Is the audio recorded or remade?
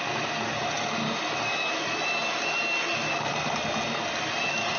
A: recorded